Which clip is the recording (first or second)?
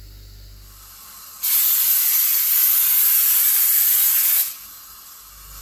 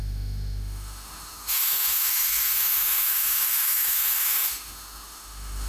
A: first